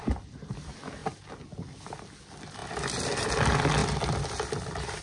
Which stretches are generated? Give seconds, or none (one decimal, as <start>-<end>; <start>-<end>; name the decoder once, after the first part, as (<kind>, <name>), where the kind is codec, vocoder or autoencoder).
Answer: 2.6-3.3 (vocoder, BigVGAN v2); 3.8-5.0